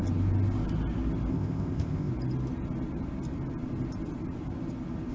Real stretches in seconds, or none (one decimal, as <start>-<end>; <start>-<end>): 0.0-1.3; 2.1-5.1